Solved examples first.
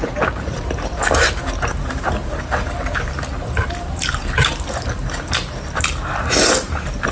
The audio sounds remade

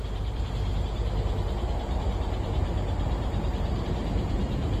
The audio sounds remade